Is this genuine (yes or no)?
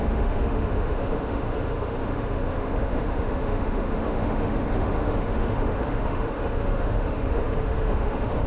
no